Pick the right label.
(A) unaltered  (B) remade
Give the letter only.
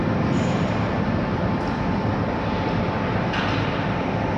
A